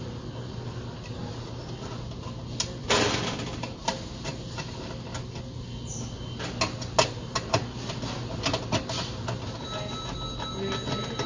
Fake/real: real